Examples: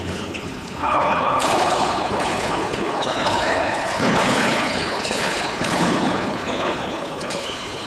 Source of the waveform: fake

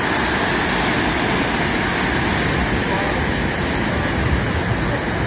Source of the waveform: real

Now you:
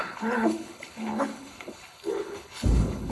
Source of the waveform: fake